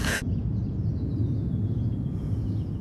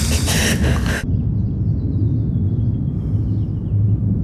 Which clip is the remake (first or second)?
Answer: first